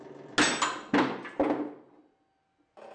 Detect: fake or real real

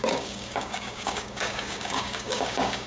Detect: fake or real fake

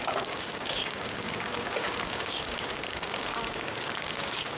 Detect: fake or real fake